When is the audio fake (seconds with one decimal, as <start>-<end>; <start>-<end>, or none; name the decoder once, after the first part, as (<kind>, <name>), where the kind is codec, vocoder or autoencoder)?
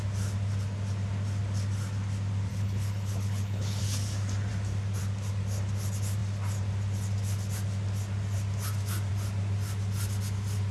2.5-3.8 (codec, HILCodec)